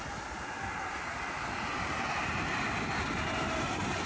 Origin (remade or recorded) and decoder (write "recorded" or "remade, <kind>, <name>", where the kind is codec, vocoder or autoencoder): recorded